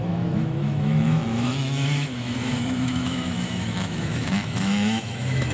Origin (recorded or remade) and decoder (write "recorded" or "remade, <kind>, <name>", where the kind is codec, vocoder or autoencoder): remade, autoencoder, DAC-VAE